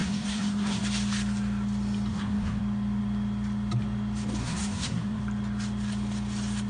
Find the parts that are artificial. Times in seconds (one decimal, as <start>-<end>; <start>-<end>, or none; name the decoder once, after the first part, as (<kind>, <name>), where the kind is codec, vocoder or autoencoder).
0.0-0.8 (codec, SNAC); 2.1-2.6; 4.4-5.2